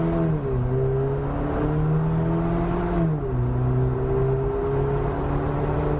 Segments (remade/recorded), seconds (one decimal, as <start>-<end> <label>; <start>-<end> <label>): 0.0-6.0 recorded